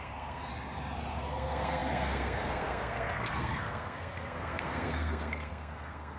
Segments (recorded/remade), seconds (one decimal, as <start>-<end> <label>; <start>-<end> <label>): 0.0-0.5 remade; 0.5-1.1 recorded; 1.1-6.2 remade